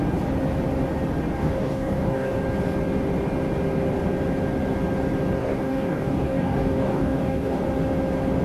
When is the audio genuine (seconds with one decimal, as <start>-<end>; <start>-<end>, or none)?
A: 0.0-1.4; 2.4-5.4; 7.6-8.4